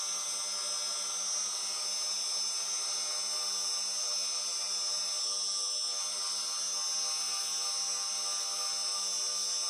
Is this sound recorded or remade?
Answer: recorded